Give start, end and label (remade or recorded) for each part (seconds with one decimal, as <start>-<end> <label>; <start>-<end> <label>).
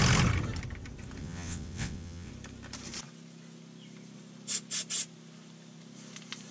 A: 0.0-1.2 recorded; 1.2-2.3 remade; 2.3-6.5 recorded